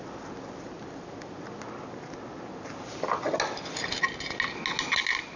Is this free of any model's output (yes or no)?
yes